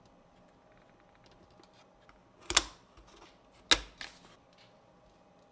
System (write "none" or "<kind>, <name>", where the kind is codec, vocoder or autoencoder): none